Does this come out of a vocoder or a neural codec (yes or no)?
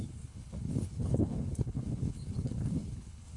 yes